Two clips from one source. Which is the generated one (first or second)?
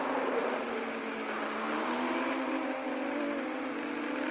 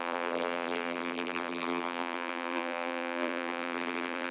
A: second